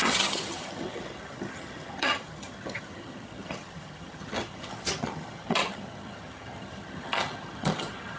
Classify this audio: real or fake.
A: fake